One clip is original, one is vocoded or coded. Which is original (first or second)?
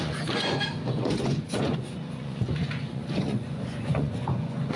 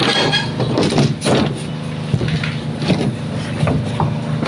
second